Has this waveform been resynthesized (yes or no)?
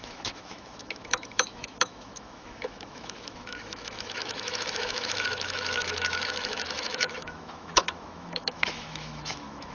yes